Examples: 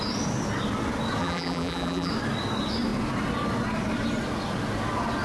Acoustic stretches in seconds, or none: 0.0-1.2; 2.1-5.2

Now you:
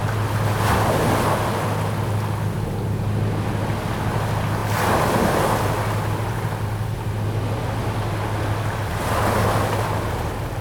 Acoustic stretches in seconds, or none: 0.0-10.6

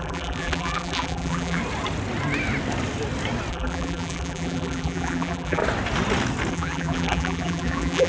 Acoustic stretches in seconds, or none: 1.6-3.5; 5.6-6.5

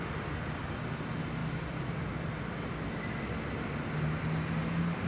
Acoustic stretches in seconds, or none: 0.0-1.4; 2.9-5.1

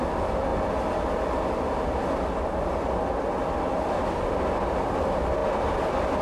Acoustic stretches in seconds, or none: 0.0-5.4